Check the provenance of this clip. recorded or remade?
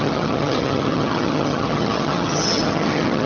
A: remade